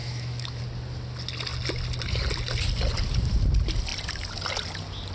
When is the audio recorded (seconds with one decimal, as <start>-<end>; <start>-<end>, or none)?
0.6-5.1